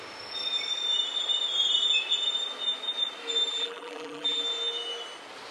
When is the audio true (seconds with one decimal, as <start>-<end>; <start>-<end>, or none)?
0.0-3.5; 4.4-5.5